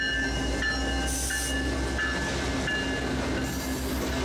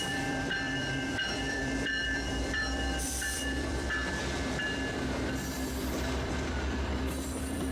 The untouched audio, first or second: first